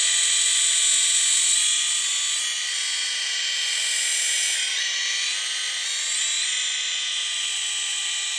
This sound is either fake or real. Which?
real